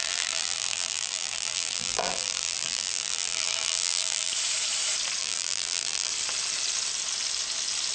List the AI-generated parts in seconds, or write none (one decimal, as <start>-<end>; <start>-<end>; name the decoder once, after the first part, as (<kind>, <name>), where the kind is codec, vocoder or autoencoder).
0.0-4.3 (vocoder, BigVGAN v2); 5.2-6.1